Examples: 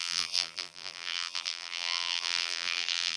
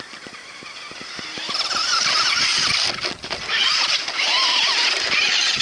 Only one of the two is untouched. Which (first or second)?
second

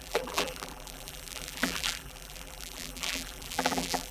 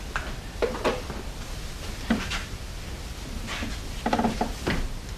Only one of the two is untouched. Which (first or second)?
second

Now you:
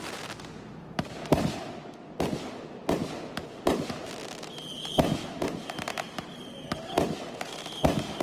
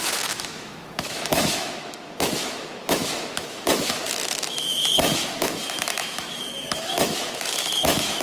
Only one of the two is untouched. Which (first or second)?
first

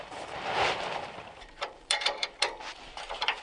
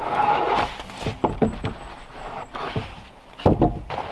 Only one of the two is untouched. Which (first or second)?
second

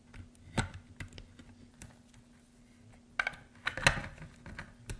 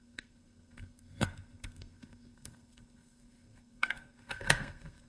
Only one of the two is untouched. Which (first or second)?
first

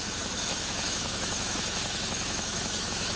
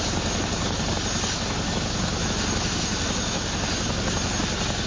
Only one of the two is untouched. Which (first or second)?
second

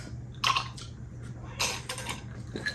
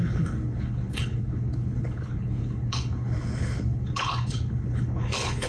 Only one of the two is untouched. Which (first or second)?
first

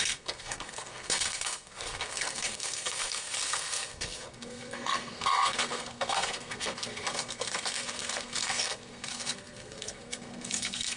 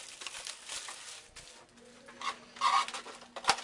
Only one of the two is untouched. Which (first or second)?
second